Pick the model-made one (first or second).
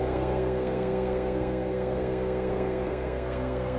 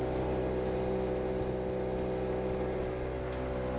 first